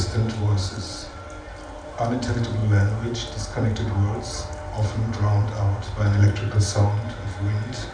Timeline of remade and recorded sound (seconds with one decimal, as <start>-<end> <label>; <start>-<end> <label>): 0.0-0.7 recorded; 0.7-1.3 remade; 1.3-7.9 recorded